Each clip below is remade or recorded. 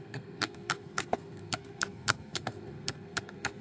remade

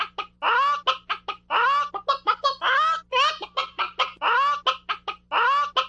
recorded